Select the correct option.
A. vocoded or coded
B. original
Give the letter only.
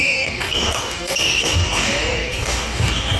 A